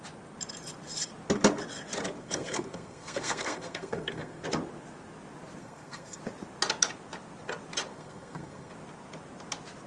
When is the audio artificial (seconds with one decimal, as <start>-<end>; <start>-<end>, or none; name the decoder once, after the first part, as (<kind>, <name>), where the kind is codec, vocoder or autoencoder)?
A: 2.2-4.4 (codec, SNAC); 5.6-6.2; 7.9-8.7